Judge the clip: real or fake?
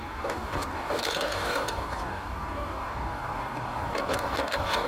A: fake